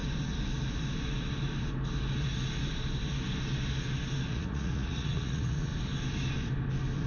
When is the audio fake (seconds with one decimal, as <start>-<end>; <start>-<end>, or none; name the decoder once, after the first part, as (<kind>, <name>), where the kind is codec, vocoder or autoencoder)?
4.3-5.7 (vocoder, Vocos)